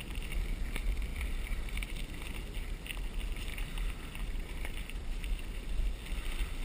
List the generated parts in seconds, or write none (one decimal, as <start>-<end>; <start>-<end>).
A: 1.1-1.9; 3.5-5.3